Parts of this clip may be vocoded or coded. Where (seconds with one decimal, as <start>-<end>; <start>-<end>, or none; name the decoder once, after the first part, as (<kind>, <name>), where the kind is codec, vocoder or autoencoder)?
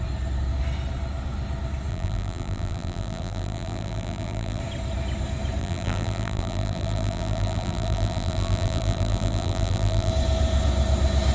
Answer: 1.9-4.6 (vocoder, BigVGAN v2); 5.6-10.1